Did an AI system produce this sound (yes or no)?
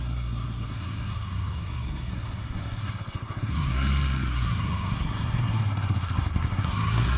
yes